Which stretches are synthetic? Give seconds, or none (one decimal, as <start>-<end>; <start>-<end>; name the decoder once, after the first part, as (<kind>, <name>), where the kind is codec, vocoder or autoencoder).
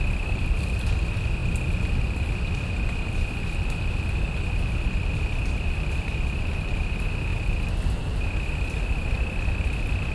none